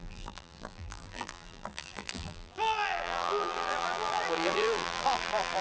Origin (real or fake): fake